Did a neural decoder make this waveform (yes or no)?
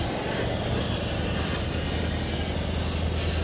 no